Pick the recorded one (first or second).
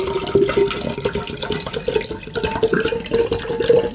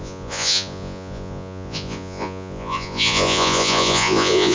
first